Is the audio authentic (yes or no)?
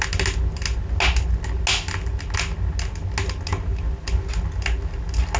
yes